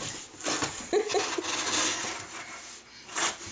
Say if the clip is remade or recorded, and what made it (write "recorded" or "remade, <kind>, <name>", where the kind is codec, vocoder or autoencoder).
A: recorded